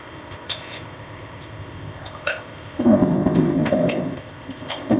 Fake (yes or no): yes